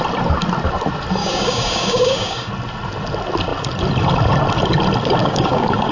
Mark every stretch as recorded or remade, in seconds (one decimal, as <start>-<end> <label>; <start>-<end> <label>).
0.0-1.2 recorded; 1.2-2.5 remade; 2.5-5.2 recorded; 5.2-5.9 remade